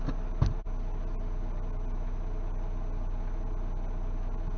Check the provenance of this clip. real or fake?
real